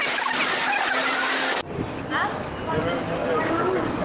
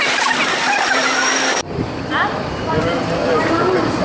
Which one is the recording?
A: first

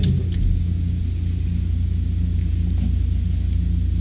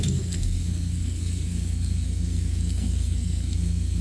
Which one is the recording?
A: first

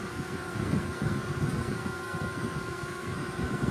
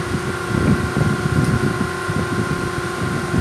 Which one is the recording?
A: second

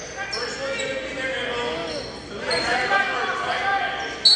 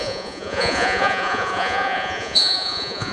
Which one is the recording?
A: first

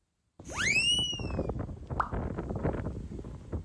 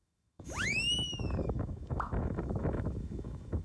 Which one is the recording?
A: first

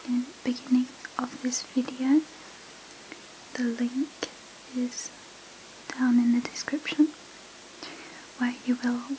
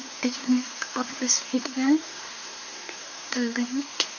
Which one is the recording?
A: first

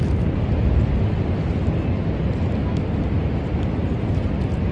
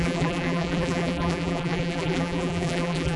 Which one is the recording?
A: first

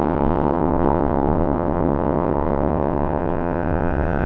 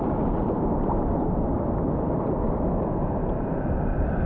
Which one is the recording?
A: second